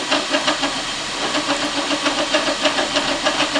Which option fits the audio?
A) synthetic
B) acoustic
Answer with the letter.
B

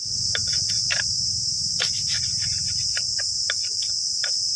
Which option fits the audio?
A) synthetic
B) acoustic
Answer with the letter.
B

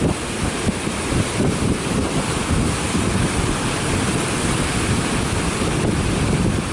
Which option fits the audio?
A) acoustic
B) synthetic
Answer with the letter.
A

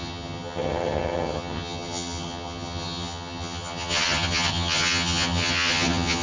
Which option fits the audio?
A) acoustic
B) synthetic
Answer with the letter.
B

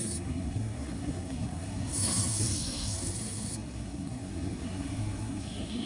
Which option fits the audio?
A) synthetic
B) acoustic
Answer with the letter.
A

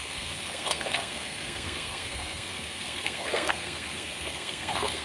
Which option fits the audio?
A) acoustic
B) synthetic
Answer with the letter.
B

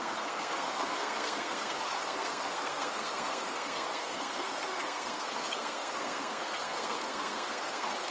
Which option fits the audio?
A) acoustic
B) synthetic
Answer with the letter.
B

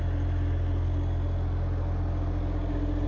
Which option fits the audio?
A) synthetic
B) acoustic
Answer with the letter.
B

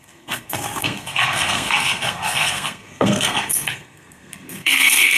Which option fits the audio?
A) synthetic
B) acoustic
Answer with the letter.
A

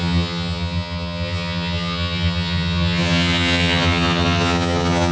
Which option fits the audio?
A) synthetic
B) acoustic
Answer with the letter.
A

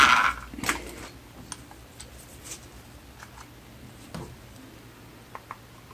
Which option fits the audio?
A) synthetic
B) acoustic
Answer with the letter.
B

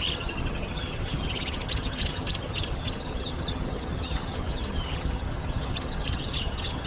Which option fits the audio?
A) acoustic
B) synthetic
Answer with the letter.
B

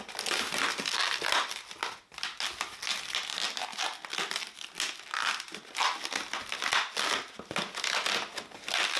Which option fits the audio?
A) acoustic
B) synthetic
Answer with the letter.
A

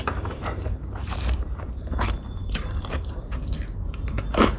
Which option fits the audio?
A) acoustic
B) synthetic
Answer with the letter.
B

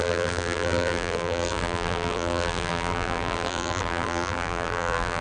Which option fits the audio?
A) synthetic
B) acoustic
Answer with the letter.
A